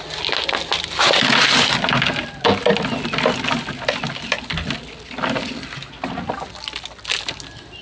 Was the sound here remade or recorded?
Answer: recorded